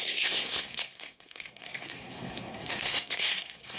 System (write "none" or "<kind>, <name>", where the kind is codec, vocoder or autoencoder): codec, SNAC